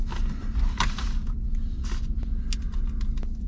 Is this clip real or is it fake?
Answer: real